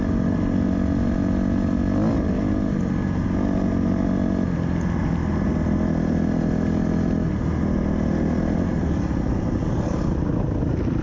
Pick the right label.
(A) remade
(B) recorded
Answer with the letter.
B